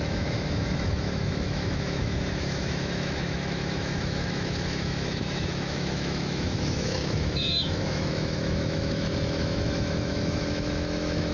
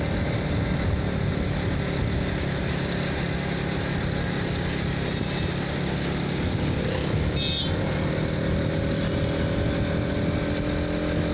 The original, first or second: second